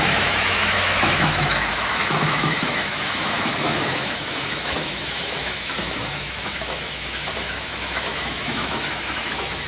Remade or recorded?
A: remade